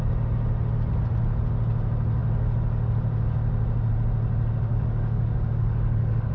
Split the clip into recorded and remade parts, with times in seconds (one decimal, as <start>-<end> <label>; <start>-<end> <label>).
0.0-4.7 recorded; 4.7-6.3 remade